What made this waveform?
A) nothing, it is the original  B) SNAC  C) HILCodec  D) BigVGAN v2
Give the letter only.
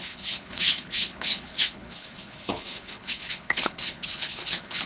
C